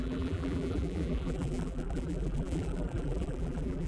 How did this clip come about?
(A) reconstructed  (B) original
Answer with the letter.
A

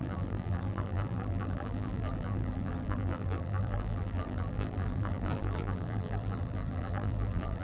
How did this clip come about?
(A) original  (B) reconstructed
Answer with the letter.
B